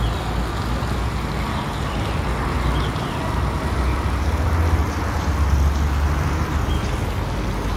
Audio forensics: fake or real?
real